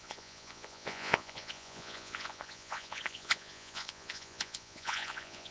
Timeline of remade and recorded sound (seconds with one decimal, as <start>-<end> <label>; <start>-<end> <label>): 0.0-5.5 remade